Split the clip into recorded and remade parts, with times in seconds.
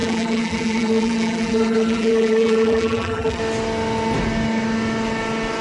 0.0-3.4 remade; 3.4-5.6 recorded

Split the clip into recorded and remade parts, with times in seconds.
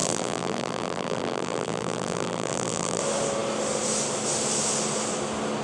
0.0-3.0 remade; 3.0-5.6 recorded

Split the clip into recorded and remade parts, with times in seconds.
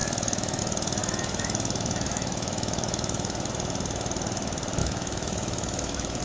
0.0-0.6 remade; 0.6-1.0 recorded; 1.0-3.5 remade; 3.5-4.8 recorded; 4.8-6.2 remade